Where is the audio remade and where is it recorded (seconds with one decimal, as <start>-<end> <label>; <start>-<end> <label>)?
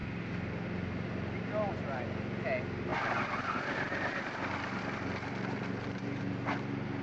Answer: 0.0-1.7 remade; 1.7-2.9 recorded; 2.9-6.2 remade; 6.2-7.0 recorded